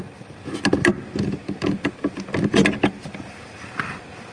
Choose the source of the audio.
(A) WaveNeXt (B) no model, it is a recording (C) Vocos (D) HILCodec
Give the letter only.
B